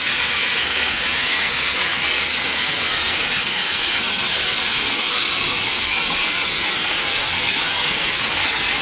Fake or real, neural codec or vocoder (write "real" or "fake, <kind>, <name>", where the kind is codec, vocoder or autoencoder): fake, codec, SNAC